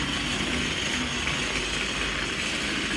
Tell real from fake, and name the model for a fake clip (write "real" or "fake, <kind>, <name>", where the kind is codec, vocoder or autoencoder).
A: real